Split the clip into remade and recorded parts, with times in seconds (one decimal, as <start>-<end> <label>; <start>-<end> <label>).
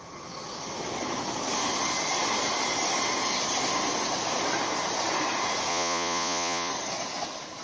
0.0-5.7 recorded; 5.7-6.7 remade; 6.7-7.6 recorded